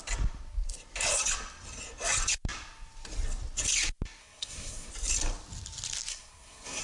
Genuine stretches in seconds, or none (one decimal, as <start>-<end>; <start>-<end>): 0.0-4.2; 4.9-6.1